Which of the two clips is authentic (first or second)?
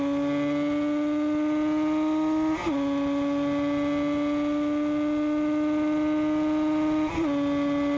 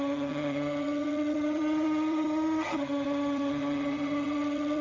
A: first